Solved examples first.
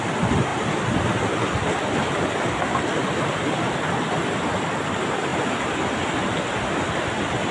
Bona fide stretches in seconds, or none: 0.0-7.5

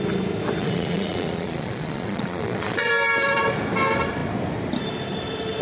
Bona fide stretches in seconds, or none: 0.0-0.6; 2.9-5.6